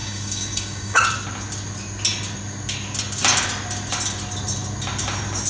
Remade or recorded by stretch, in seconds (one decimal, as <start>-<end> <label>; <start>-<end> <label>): 0.0-1.0 remade; 1.0-5.5 recorded